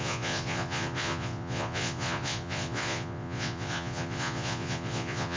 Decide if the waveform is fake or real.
fake